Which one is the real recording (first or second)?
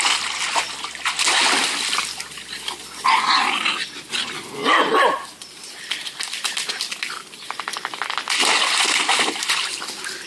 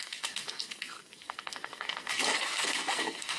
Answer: first